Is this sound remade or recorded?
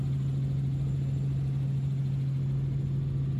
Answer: recorded